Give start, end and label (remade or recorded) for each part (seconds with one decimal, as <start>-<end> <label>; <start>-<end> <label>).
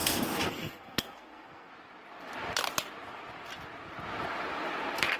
0.0-1.7 remade; 1.7-5.2 recorded